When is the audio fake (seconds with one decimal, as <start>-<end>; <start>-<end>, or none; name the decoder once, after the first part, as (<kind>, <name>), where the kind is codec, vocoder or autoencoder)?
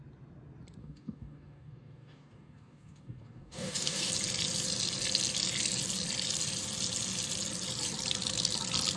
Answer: 0.8-4.1 (codec, DAC)